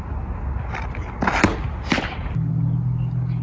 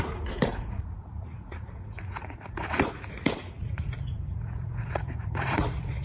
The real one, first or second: first